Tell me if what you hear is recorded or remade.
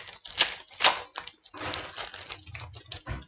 recorded